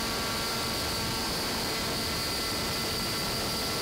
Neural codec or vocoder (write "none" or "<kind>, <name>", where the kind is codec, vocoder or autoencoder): none